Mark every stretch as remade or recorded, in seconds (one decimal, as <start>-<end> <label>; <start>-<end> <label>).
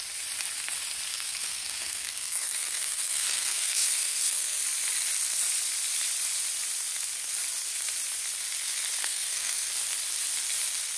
0.0-1.1 recorded; 1.1-4.6 remade; 4.6-9.0 recorded; 9.0-9.7 remade; 9.7-11.0 recorded